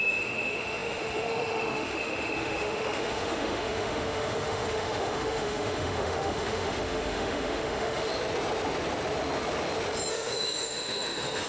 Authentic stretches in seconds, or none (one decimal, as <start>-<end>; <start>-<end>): 8.1-10.1

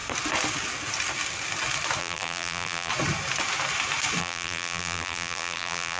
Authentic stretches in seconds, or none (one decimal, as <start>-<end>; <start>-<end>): 0.0-2.0; 2.9-4.2

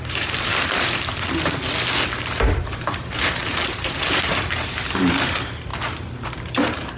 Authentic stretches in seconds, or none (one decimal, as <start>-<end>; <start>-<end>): 0.5-2.6; 5.7-6.3

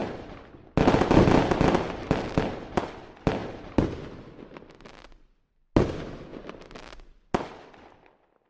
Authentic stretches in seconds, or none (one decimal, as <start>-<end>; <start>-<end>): 0.0-8.5